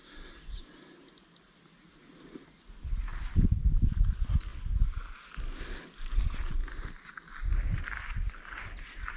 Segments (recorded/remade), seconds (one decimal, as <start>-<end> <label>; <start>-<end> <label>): 0.0-9.2 recorded